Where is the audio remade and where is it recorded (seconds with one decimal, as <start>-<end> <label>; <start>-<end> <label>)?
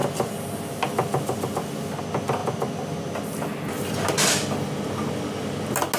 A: 0.0-6.0 recorded